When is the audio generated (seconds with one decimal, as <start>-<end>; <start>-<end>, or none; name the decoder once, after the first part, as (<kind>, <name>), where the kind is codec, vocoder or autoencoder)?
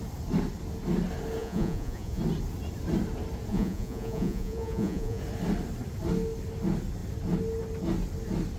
1.4-2.2 (vocoder, Vocos); 3.5-5.2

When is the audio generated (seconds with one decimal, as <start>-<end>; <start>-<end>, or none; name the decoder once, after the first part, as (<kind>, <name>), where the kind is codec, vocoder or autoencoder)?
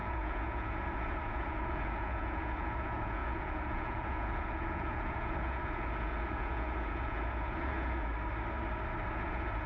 0.0-8.1 (vocoder, Vocos); 9.1-9.7